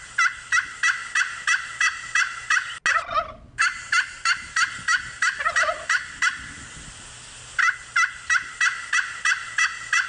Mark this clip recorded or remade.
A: recorded